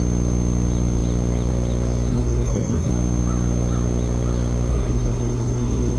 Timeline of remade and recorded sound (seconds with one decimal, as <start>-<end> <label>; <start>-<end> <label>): 0.0-2.1 recorded; 2.1-2.9 remade; 2.9-4.7 recorded; 4.7-6.0 remade